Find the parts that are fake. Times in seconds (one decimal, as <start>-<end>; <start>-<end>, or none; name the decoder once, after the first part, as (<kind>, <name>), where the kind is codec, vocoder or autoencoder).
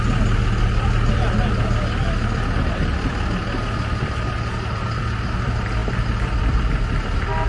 none